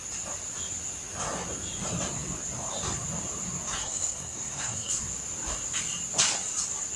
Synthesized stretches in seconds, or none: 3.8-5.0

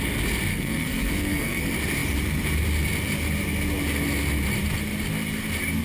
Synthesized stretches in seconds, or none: 0.5-1.6

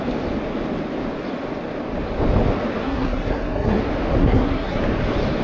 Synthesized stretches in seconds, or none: 2.8-3.8; 4.2-4.8

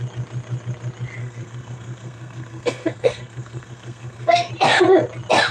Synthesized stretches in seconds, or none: 1.2-4.5

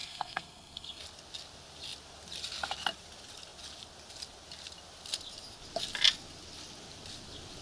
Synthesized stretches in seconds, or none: 0.0-1.0

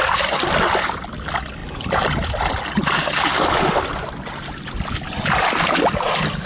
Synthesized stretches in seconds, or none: none

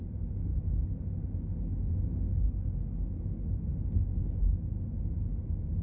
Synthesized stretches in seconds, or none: none